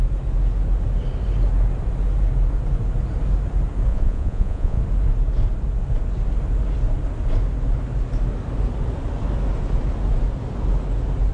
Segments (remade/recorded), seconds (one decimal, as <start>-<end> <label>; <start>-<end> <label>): 0.0-3.9 recorded; 3.9-4.8 remade; 4.8-11.3 recorded